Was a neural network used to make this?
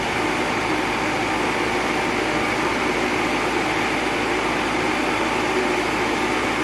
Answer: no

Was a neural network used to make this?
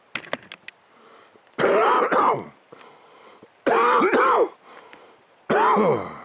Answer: no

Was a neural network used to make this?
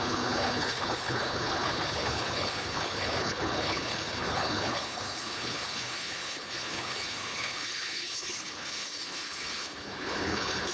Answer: yes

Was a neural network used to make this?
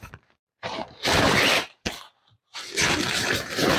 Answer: yes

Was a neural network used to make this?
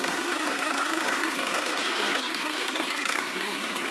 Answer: yes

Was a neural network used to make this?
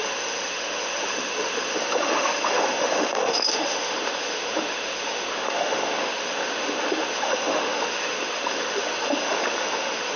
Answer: yes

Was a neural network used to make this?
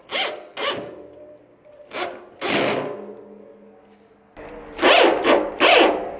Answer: no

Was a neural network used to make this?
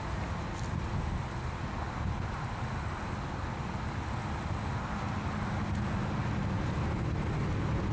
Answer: no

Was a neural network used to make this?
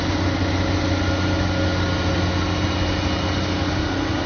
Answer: no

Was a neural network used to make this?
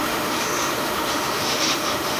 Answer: yes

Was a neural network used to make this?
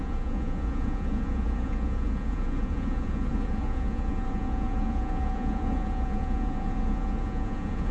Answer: yes